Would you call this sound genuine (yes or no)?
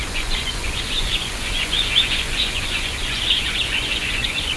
no